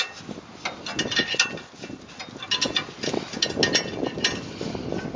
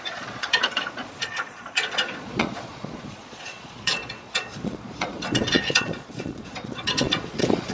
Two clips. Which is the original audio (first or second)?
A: first